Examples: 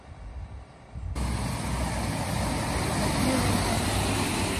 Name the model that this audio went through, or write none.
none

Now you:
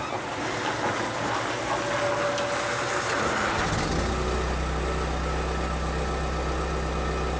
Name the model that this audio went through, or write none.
none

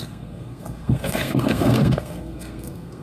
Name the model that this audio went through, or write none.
codec, SNAC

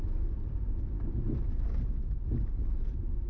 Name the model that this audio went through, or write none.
none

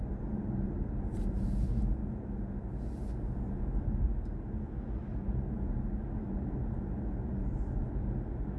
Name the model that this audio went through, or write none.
none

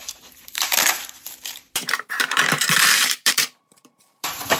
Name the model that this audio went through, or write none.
vocoder, BigVGAN v2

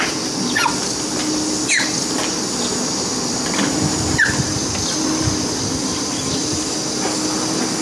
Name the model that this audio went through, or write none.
none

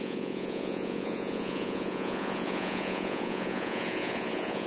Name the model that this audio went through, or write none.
vocoder, Vocos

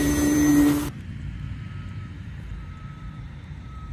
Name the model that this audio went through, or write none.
vocoder, BigVGAN v2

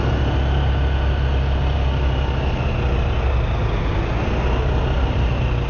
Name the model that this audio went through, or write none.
none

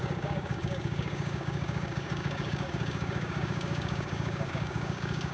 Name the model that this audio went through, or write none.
codec, DAC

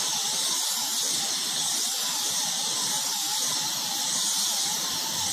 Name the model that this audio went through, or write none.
none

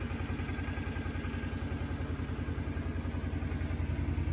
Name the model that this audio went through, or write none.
none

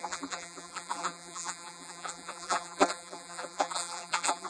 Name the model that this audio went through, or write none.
vocoder, BigVGAN v2